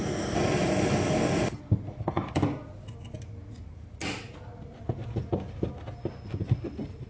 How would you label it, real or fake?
real